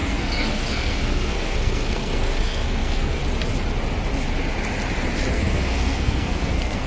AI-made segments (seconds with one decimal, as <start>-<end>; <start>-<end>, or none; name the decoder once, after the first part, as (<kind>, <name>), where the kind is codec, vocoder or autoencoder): 0.0-3.2 (codec, SNAC); 5.3-6.9